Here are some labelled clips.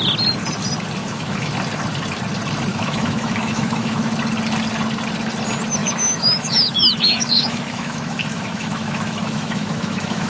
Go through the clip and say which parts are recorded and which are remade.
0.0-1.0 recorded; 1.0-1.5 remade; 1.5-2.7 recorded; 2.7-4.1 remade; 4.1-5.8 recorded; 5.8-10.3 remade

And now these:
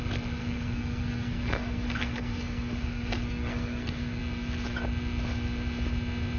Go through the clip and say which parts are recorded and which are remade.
0.0-0.4 recorded; 0.4-4.2 remade; 4.2-6.4 recorded

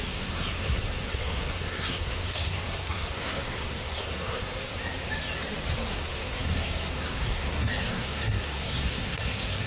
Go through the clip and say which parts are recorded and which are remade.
0.0-4.7 remade; 4.7-5.9 recorded; 5.9-9.7 remade

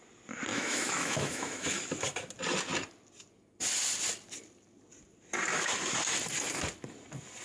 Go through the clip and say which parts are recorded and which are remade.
0.0-0.5 recorded; 0.5-1.8 remade; 1.8-7.4 recorded

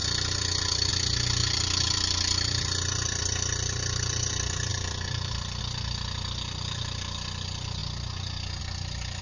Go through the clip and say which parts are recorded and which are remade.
0.0-0.9 remade; 0.9-1.4 recorded; 1.4-4.3 remade; 4.3-4.7 recorded; 4.7-5.6 remade; 5.6-9.2 recorded

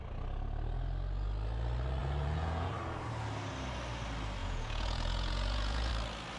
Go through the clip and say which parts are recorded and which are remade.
0.0-2.0 recorded; 2.0-2.7 remade; 2.7-4.4 recorded; 4.4-5.9 remade; 5.9-6.4 recorded

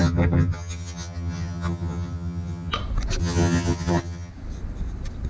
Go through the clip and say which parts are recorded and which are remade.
0.0-2.7 remade; 2.7-3.2 recorded; 3.2-4.3 remade; 4.3-5.3 recorded